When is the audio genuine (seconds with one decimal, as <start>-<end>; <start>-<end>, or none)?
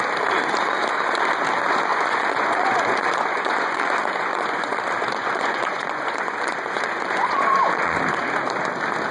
0.0-1.9; 4.8-5.2; 8.0-9.1